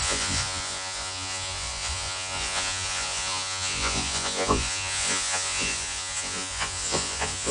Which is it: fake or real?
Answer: fake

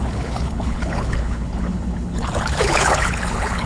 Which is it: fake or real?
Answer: fake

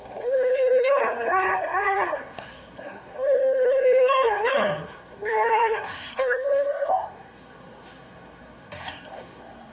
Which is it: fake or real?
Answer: fake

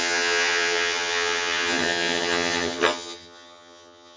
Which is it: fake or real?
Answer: fake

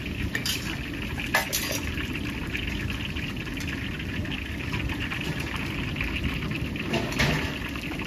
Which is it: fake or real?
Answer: real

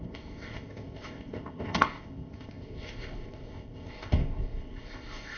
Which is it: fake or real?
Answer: fake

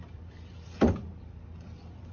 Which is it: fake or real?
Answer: fake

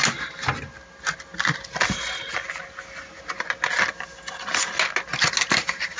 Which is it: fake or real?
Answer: real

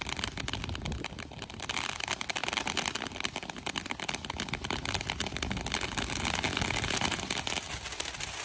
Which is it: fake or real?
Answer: real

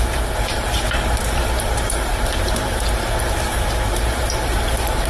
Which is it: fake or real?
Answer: fake